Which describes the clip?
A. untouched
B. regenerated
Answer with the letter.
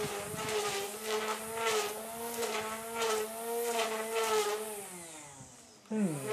A